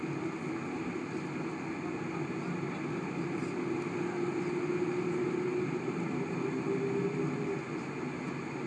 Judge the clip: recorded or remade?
recorded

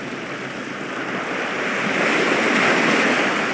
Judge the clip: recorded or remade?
recorded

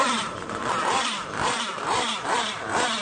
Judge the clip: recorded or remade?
remade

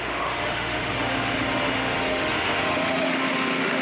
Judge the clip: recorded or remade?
remade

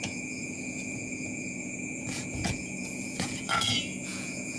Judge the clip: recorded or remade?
remade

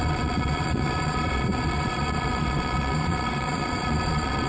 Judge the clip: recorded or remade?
remade